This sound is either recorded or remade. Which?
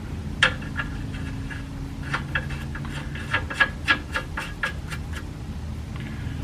recorded